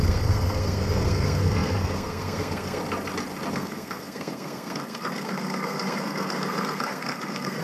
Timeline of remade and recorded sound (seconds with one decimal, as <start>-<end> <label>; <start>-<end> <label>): 0.0-2.8 remade; 2.8-3.5 recorded; 3.5-7.6 remade